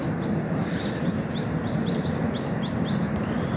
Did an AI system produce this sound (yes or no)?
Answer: no